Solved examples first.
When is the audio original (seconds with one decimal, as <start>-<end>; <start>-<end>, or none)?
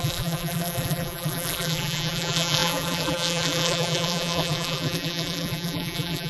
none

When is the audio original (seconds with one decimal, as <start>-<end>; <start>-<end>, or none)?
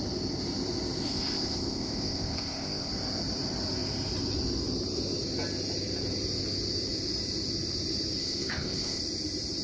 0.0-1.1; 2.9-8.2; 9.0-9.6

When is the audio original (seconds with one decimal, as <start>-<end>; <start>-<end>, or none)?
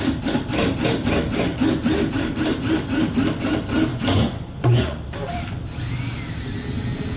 0.0-3.9; 5.0-7.2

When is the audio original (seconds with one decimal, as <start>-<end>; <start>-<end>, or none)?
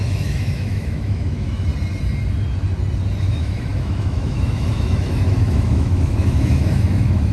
1.7-3.2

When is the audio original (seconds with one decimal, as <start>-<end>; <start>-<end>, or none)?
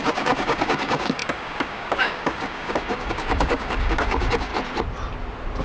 4.5-5.6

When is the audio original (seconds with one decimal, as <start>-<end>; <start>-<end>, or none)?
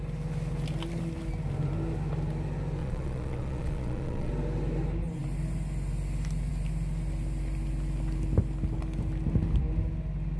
0.0-2.8; 4.3-10.4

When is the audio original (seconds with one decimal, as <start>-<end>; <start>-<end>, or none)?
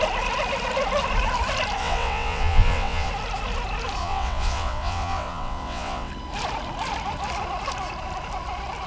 0.0-1.8; 3.1-4.0; 6.1-8.9